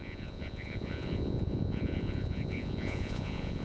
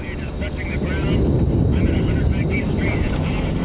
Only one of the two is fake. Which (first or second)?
first